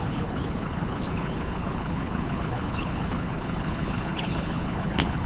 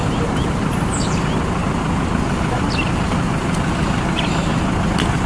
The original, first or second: second